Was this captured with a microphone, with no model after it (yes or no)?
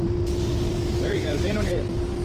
yes